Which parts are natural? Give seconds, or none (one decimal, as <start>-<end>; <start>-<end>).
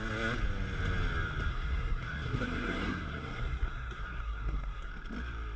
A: 0.0-1.5; 4.9-5.6